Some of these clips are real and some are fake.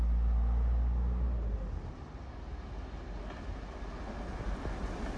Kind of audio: real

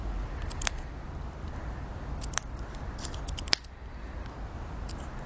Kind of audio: real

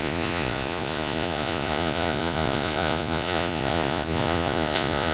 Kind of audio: fake